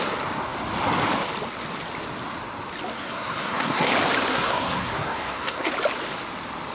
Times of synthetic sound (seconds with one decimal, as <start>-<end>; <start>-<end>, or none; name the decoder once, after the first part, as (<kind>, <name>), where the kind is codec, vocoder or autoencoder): 2.9-3.9 (codec, SNAC); 4.3-5.7